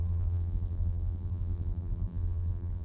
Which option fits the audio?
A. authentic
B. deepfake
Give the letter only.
B